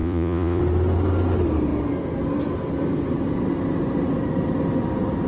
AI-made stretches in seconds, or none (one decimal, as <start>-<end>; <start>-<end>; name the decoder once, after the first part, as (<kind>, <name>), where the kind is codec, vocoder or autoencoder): 0.0-0.6 (vocoder, Vocos)